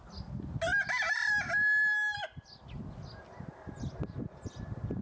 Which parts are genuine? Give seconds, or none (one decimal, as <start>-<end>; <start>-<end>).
0.0-5.0